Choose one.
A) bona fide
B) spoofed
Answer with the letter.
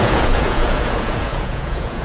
B